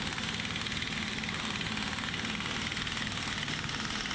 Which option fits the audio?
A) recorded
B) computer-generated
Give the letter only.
A